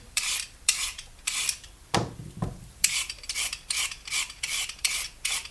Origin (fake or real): fake